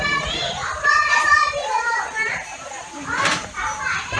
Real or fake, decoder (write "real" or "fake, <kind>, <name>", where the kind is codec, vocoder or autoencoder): fake, vocoder, BigVGAN v2